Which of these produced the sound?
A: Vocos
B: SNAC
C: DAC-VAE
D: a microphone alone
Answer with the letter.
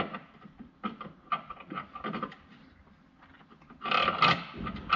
D